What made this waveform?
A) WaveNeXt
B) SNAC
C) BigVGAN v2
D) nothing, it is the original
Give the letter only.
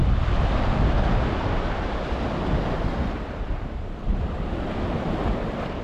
D